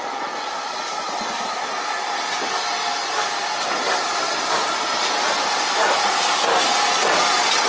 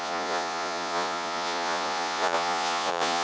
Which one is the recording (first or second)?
first